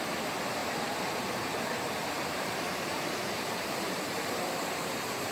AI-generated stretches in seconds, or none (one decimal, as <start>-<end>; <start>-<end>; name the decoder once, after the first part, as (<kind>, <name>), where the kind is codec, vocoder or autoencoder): 0.6-1.5 (vocoder, BigVGAN v2); 2.0-5.3